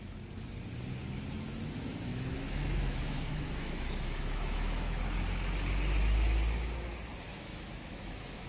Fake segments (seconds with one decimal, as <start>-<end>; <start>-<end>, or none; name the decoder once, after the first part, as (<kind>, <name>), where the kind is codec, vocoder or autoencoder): 2.1-5.0 (autoencoder, DAC-VAE); 7.3-8.5